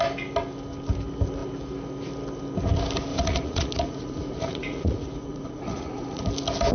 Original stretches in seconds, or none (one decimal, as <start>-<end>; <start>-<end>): 0.0-3.1; 6.3-6.7